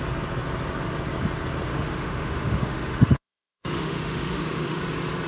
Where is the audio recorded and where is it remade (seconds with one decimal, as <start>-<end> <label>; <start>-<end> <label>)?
0.0-1.7 recorded; 1.7-4.8 remade; 4.8-5.3 recorded